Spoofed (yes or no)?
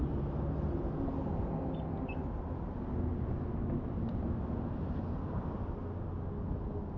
no